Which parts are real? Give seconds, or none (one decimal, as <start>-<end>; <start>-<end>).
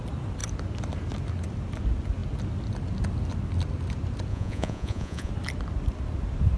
0.0-4.3; 5.3-6.6